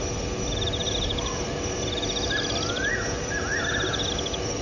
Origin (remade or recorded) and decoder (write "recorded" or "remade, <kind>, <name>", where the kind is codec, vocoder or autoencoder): recorded